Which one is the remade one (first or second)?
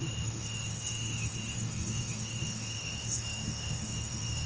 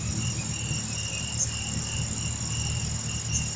first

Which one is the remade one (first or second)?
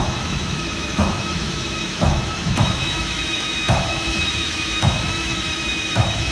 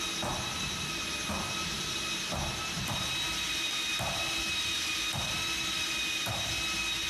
first